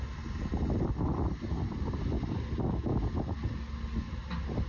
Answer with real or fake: real